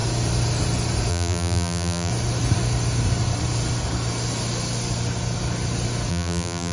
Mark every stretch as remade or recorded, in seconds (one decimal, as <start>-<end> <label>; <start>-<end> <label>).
0.0-1.1 recorded; 1.1-2.1 remade; 2.1-6.1 recorded; 6.1-6.7 remade

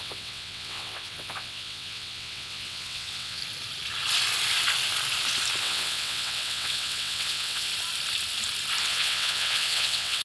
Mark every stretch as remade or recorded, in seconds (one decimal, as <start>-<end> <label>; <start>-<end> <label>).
0.0-3.4 remade; 3.4-5.6 recorded; 5.6-7.7 remade; 7.7-8.8 recorded; 8.8-10.2 remade